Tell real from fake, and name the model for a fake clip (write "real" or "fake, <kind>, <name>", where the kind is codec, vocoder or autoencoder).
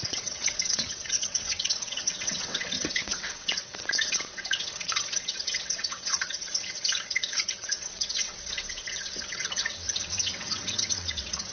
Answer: fake, vocoder, WaveNeXt